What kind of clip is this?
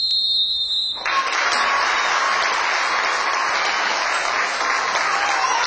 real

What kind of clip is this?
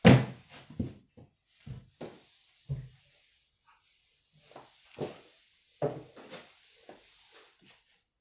real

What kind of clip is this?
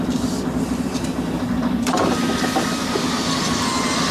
real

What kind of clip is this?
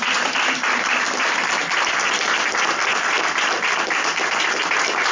fake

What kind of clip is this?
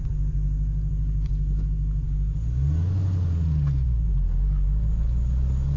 real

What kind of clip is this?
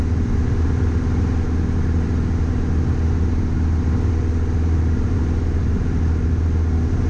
real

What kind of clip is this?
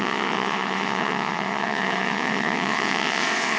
fake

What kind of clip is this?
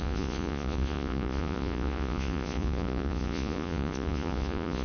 fake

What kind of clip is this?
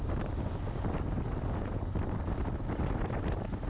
fake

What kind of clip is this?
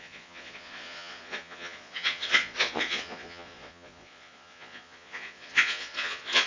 fake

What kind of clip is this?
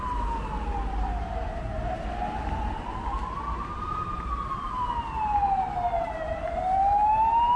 real